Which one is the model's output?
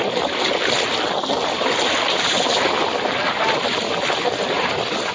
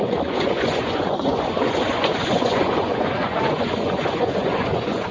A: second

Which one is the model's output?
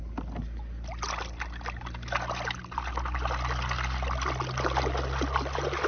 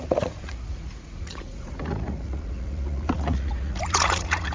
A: second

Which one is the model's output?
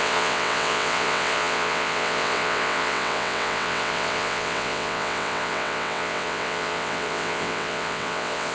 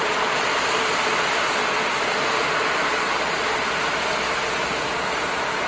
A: first